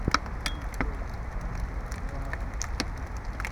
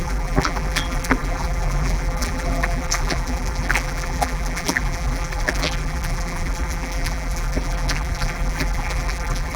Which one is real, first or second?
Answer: first